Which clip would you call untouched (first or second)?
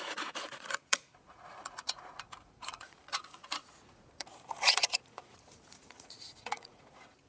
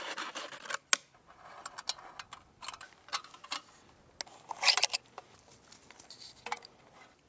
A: second